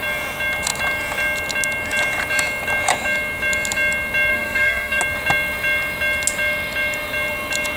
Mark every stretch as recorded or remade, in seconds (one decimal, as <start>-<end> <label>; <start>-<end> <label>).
0.0-4.3 recorded; 4.3-5.0 remade; 5.0-7.8 recorded